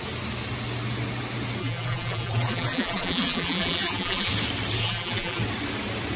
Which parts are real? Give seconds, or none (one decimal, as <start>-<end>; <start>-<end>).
0.0-1.6; 4.3-4.8; 5.4-6.2